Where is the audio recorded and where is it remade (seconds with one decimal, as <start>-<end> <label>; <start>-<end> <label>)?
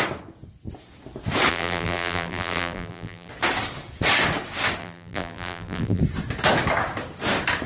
0.0-1.5 recorded; 1.5-3.3 remade; 3.3-4.8 recorded; 4.8-6.0 remade; 6.0-7.7 recorded